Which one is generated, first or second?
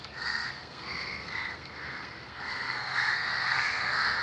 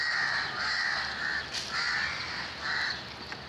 first